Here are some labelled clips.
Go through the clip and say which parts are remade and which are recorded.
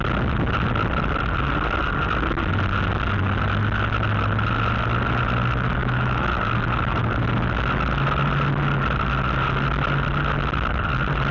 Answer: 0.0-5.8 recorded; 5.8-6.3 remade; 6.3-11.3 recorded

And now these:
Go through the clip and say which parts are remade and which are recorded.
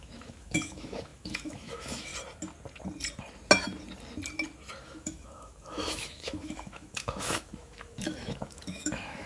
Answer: 0.0-2.1 remade; 2.1-4.8 recorded; 4.8-9.3 remade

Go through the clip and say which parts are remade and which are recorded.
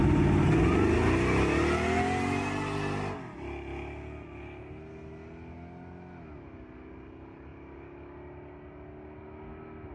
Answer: 0.0-9.9 recorded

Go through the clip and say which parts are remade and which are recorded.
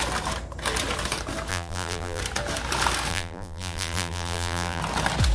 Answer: 0.0-1.5 recorded; 1.5-2.2 remade; 2.2-3.1 recorded; 3.1-4.8 remade; 4.8-5.3 recorded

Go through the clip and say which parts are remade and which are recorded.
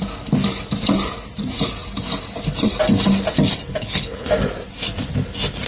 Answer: 0.0-3.7 recorded; 3.7-4.3 remade; 4.3-5.7 recorded